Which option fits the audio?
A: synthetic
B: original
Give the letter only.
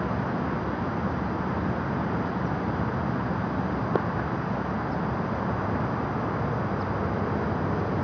B